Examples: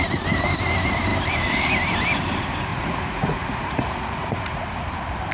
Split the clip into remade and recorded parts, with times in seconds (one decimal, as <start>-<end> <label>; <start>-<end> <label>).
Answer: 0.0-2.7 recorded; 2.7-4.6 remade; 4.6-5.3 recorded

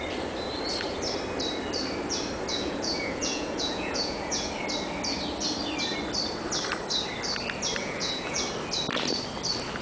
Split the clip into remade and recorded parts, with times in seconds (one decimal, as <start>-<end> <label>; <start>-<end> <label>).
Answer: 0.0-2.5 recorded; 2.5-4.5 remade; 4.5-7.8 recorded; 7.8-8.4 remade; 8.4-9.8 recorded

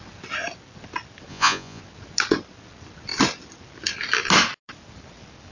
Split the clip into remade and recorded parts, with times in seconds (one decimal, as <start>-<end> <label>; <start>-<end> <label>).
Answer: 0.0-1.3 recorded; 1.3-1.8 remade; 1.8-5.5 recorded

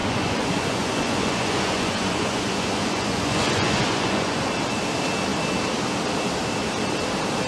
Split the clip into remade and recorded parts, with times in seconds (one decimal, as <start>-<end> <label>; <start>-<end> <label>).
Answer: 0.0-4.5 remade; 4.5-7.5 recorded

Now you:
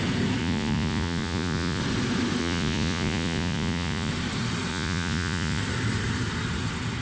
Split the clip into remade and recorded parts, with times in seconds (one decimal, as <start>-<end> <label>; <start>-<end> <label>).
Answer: 0.0-0.4 recorded; 0.4-1.8 remade; 1.8-2.4 recorded; 2.4-4.1 remade; 4.1-4.7 recorded; 4.7-5.6 remade; 5.6-7.0 recorded

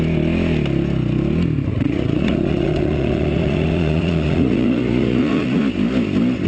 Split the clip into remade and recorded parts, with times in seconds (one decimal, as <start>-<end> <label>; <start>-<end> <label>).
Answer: 0.0-1.7 recorded; 1.7-5.6 remade; 5.6-6.5 recorded

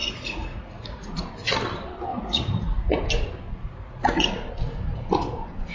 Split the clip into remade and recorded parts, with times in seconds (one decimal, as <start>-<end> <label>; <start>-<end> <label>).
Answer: 0.0-1.2 remade; 1.2-2.1 recorded; 2.1-3.0 remade; 3.0-3.5 recorded; 3.5-4.5 remade; 4.5-5.7 recorded